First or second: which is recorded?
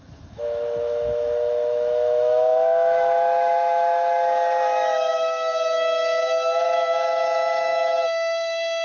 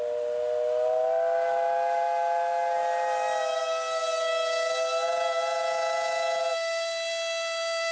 second